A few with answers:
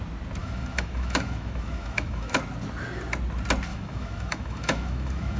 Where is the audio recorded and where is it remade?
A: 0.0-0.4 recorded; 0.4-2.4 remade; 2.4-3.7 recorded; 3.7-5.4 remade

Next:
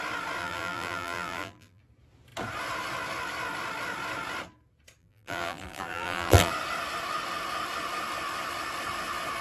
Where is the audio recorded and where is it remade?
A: 0.0-0.4 recorded; 0.4-1.8 remade; 1.8-5.0 recorded; 5.0-6.5 remade; 6.5-9.4 recorded